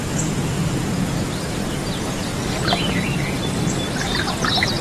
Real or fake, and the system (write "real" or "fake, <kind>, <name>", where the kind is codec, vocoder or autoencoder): real